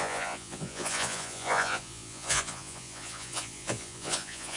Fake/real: fake